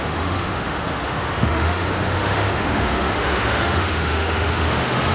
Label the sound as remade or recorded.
remade